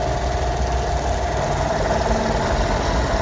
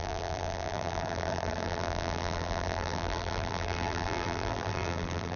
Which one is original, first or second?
first